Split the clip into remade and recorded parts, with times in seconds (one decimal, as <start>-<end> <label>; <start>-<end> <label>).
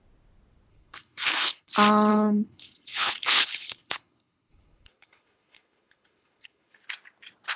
0.0-0.7 recorded; 0.7-1.7 remade; 1.7-2.1 recorded; 2.1-6.7 remade; 6.7-7.6 recorded